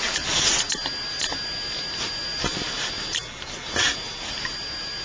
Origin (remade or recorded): recorded